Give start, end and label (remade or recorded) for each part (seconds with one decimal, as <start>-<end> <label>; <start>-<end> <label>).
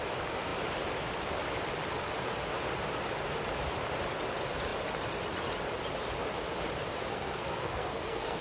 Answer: 0.0-7.1 recorded; 7.1-8.4 remade